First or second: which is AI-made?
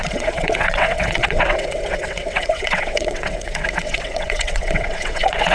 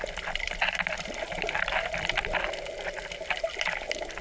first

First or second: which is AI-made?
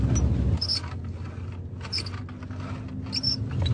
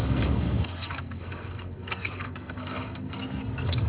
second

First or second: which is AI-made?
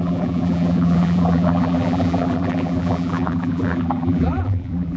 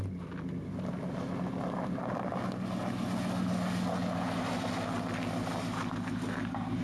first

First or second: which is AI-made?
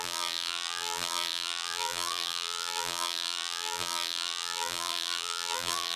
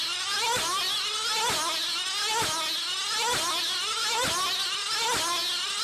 first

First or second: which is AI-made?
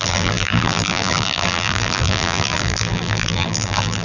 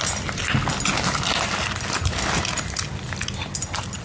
first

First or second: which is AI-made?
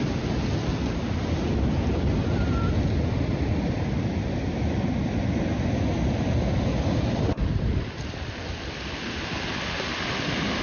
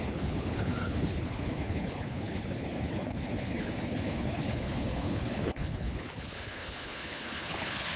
second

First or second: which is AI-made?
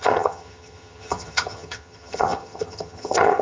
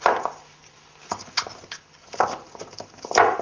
first